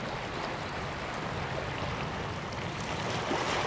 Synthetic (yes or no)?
no